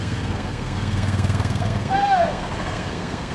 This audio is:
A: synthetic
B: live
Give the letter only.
A